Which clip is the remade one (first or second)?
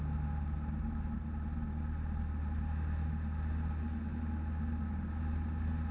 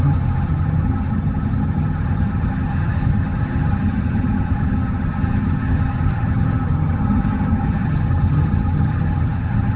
second